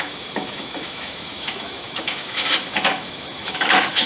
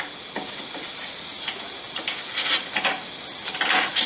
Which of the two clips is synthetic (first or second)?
first